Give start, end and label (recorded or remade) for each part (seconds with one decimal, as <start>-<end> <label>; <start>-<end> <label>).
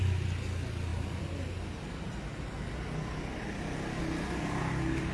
0.0-5.1 recorded